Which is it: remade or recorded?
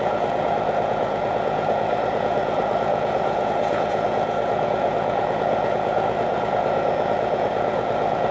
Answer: remade